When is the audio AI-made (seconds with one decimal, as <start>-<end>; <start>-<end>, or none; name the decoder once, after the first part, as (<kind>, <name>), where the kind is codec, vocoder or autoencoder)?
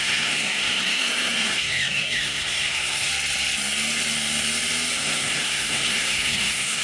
0.0-3.1 (codec, SNAC); 4.9-6.8